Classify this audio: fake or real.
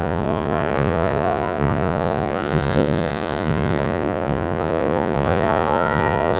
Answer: fake